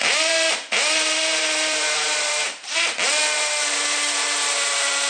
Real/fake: fake